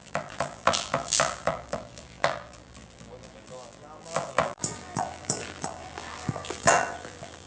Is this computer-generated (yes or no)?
yes